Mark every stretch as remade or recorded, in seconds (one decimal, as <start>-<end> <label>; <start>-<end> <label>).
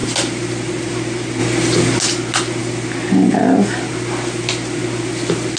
0.0-5.6 recorded